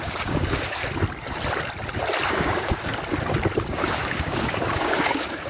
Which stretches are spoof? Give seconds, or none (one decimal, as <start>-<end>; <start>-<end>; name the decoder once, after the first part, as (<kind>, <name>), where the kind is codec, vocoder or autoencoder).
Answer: 0.0-0.8 (codec, DAC); 2.3-2.9; 3.7-5.5